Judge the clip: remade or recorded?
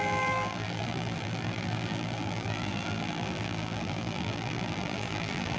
remade